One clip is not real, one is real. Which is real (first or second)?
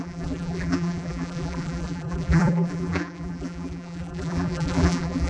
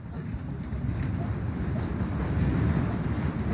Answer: second